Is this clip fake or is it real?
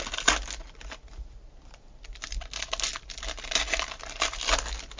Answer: real